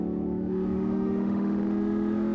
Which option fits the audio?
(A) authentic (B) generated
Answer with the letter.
B